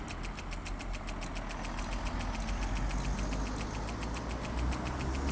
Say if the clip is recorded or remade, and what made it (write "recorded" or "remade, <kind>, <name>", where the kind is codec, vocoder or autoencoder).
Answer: recorded